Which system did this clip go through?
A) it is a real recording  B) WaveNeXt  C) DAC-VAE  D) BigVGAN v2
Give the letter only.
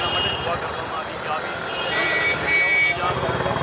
A